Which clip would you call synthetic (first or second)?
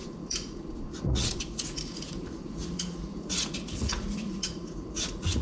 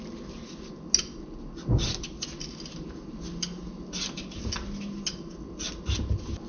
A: first